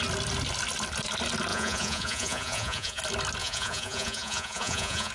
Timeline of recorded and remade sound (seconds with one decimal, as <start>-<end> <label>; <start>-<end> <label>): 0.0-1.5 recorded; 1.5-3.0 remade; 3.0-3.4 recorded; 3.4-5.1 remade